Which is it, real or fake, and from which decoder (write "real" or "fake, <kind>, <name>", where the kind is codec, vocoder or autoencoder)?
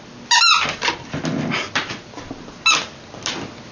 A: real